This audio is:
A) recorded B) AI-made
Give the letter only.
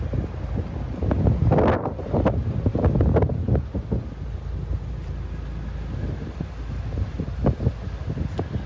A